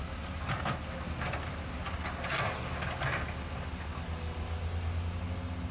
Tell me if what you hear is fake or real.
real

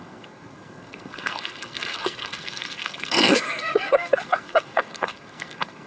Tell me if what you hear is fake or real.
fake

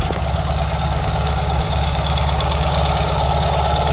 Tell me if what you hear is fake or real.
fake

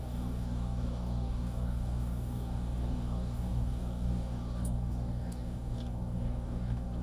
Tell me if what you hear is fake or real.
fake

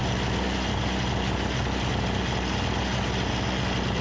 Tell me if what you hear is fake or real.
real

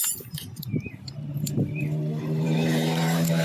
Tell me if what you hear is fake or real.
fake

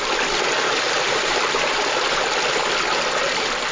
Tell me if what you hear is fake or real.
real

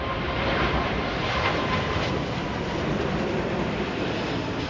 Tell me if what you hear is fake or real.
fake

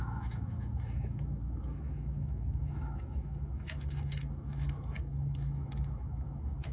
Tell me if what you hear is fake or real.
fake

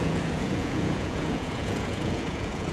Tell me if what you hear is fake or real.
fake